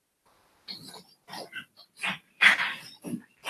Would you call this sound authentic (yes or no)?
yes